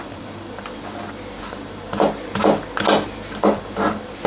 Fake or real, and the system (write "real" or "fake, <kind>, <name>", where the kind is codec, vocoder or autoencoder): real